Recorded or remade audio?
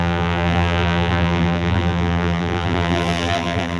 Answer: remade